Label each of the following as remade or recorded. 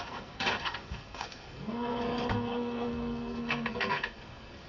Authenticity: remade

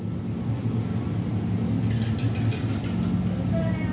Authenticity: recorded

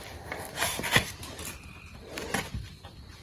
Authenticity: recorded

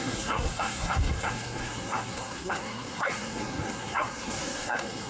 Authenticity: remade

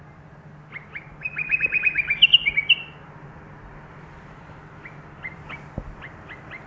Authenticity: recorded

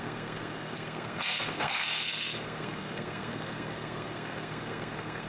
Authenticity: remade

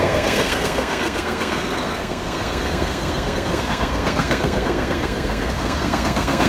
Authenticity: remade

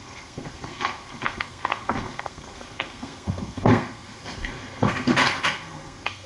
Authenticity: remade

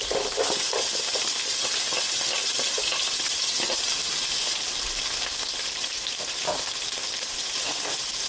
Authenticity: recorded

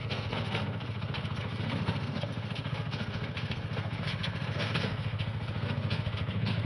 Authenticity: remade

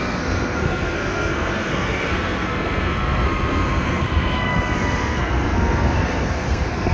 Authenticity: remade